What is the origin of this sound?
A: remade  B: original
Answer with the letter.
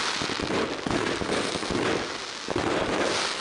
B